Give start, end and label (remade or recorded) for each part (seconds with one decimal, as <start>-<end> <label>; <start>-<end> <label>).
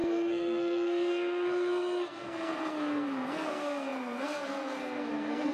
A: 0.0-5.5 remade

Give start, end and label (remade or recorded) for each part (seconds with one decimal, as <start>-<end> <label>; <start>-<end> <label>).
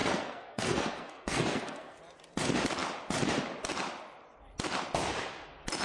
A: 0.0-2.0 remade; 2.0-5.8 recorded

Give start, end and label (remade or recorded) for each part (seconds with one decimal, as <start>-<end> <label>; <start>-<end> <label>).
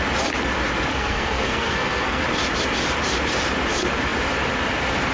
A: 0.0-0.9 recorded; 0.9-2.2 remade; 2.2-5.1 recorded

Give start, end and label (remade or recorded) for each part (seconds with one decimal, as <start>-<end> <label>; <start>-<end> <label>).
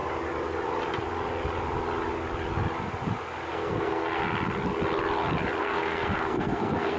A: 0.0-3.5 recorded; 3.5-4.2 remade; 4.2-5.6 recorded; 5.6-7.0 remade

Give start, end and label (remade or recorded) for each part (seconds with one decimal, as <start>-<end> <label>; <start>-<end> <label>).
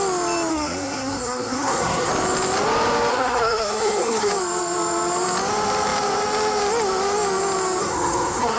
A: 0.0-0.5 recorded; 0.5-2.1 remade; 2.1-3.1 recorded; 3.1-4.3 remade; 4.3-7.8 recorded; 7.8-8.6 remade